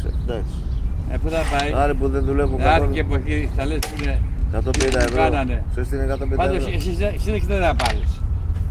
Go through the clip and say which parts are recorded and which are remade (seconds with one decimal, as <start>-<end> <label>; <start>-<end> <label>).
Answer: 0.0-8.7 recorded

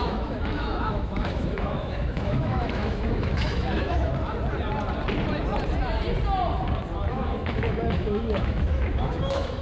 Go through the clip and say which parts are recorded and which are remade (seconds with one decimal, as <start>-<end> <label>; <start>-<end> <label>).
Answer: 0.0-4.1 remade; 4.1-7.1 recorded; 7.1-9.6 remade

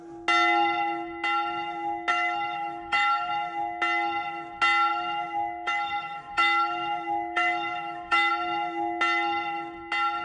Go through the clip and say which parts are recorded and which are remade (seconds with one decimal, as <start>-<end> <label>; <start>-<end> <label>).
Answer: 0.0-2.1 recorded; 2.1-3.3 remade; 3.3-4.9 recorded; 4.9-8.3 remade; 8.3-10.2 recorded

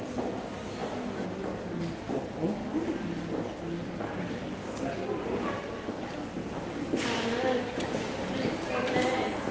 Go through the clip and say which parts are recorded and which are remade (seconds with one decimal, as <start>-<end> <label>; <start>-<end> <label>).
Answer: 0.0-9.5 recorded